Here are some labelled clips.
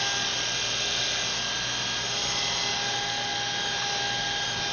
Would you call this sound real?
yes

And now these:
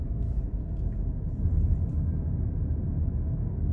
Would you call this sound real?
yes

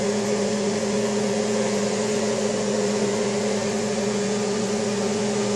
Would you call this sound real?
no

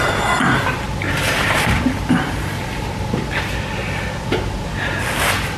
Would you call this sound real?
yes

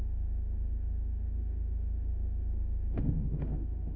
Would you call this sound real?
no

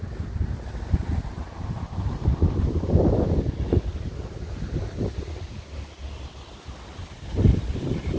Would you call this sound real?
yes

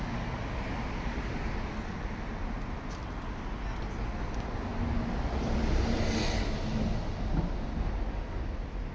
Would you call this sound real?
yes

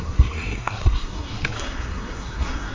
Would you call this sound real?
no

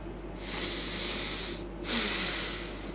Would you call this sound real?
yes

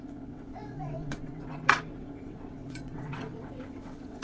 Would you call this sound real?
no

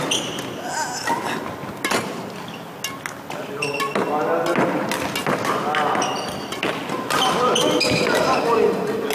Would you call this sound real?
yes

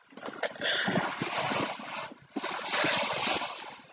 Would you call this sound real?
yes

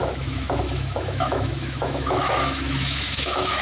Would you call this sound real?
no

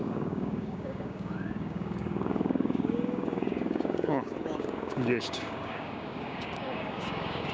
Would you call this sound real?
no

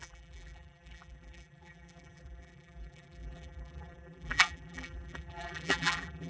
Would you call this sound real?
no